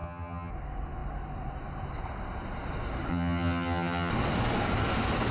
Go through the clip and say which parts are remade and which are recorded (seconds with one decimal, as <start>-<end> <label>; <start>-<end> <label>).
0.0-0.5 remade; 0.5-3.1 recorded; 3.1-4.1 remade; 4.1-5.3 recorded